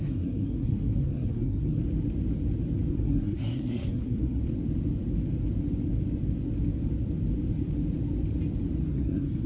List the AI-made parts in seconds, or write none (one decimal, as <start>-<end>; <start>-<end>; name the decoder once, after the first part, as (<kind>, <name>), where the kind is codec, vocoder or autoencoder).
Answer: 0.0-1.8 (codec, SNAC); 2.9-4.4; 8.9-9.5